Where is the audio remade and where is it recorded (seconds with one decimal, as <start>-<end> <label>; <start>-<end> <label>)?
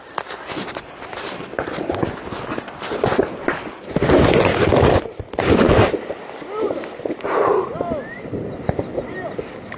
0.0-9.8 recorded